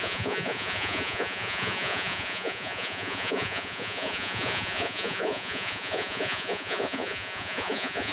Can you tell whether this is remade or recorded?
remade